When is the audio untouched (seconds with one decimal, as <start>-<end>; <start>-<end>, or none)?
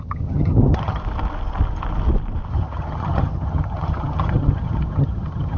1.0-2.5